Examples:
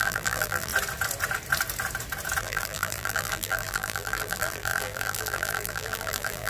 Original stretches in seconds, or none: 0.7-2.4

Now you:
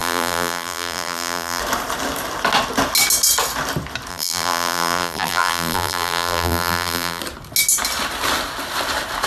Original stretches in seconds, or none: 1.6-4.1; 7.2-9.3

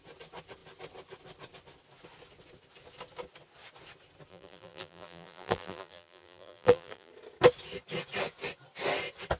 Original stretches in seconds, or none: 0.0-4.3; 7.1-9.4

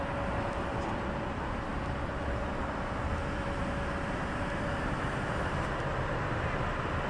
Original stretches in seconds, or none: none

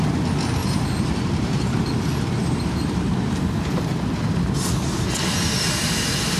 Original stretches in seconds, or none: 0.0-0.6; 3.5-6.4